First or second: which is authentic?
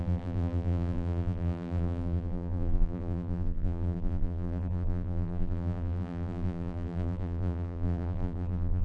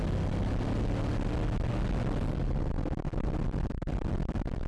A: second